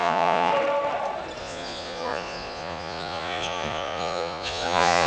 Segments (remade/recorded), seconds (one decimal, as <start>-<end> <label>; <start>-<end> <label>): 0.0-0.5 remade; 0.5-1.4 recorded; 1.4-5.1 remade